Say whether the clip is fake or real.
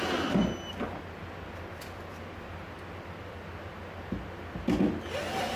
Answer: real